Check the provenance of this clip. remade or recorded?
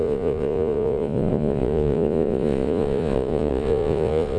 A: remade